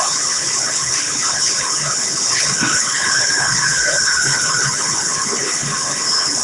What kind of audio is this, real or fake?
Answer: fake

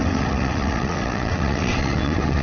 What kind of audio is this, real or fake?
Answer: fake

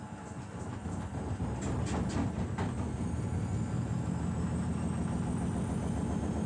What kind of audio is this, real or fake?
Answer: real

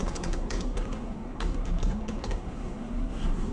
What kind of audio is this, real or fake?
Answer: fake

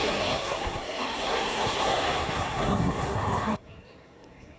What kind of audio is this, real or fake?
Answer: fake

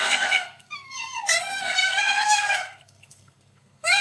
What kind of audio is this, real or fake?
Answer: fake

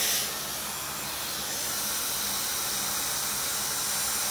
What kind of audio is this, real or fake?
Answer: real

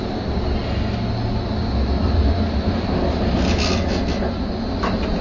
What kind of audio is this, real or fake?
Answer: real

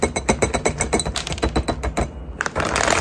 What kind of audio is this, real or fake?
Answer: real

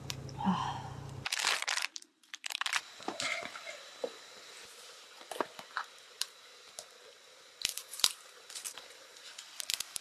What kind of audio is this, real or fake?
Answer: fake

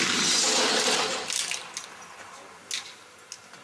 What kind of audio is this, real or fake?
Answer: real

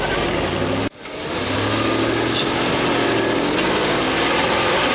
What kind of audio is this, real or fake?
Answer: real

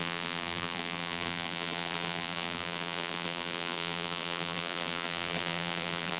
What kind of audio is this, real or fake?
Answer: fake